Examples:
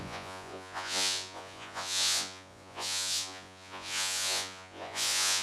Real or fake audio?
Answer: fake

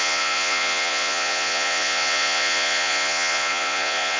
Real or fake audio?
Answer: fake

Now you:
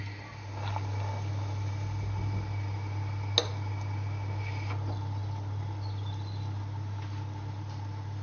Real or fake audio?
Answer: real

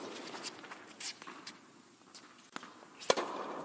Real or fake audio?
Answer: real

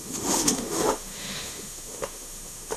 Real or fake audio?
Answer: fake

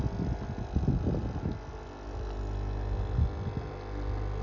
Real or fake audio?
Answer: real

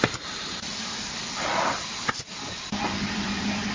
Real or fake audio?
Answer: real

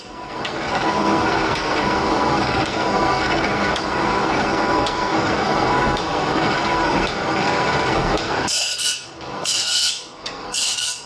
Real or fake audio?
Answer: fake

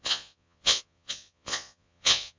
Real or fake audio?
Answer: fake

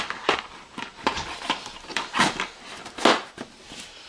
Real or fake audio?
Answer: real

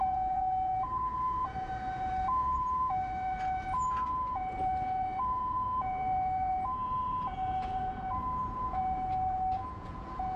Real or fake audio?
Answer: fake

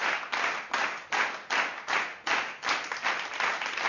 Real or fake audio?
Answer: real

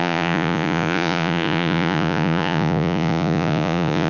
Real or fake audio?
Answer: fake